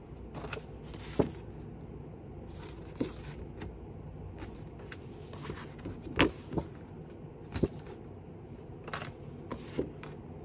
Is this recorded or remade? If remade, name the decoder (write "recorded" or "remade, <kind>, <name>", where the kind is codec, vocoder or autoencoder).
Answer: recorded